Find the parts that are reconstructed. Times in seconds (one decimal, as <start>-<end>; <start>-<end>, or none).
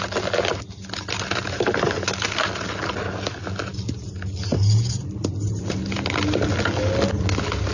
none